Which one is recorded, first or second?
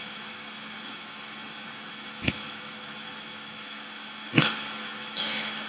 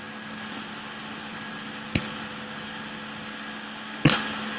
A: second